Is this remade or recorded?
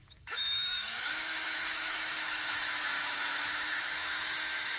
remade